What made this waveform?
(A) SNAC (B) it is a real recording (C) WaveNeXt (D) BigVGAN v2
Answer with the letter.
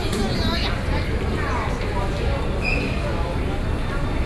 B